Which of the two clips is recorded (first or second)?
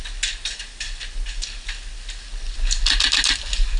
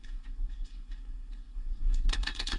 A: first